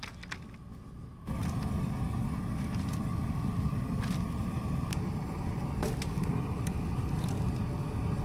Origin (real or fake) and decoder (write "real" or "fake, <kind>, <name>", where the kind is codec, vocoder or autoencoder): real